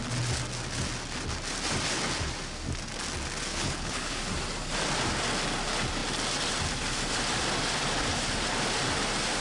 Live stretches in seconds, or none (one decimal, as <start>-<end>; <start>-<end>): 0.0-3.5; 4.2-9.4